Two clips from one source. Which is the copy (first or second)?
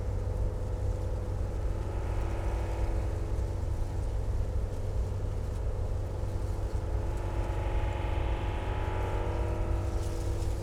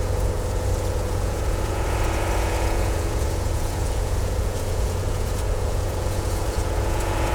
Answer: second